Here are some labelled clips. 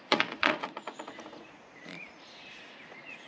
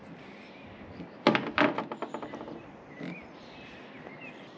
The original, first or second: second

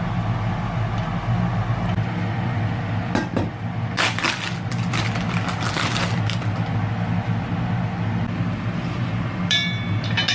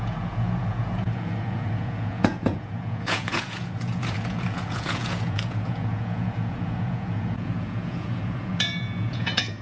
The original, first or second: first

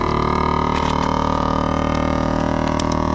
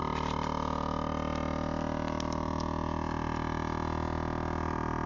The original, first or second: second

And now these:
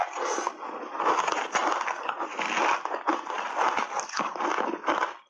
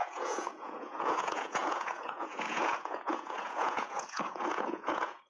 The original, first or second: first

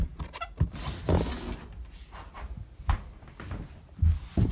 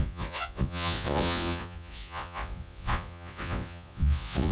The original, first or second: first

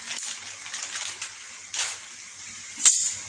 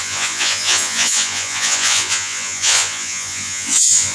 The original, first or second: first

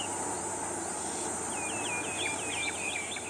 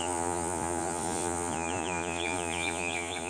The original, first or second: first